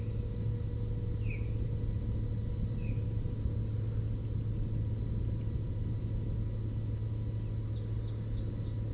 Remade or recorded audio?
recorded